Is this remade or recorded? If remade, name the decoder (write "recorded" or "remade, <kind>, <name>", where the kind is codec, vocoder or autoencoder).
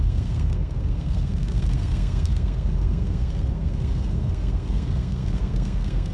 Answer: remade, codec, SNAC